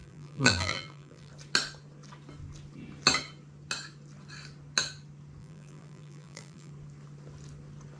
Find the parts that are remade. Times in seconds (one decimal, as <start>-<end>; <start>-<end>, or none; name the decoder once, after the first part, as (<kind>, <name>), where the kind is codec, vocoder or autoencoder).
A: 0.0-1.3 (vocoder, BigVGAN v2); 5.4-6.7